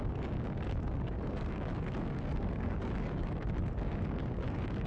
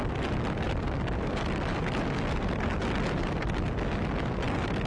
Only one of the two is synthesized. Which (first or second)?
first